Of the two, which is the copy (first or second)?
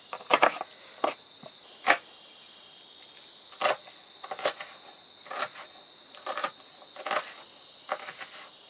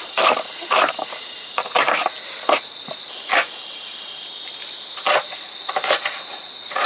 second